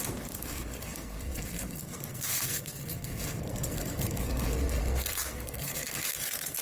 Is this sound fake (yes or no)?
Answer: yes